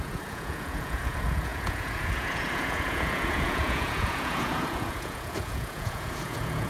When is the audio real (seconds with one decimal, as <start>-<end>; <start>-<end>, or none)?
none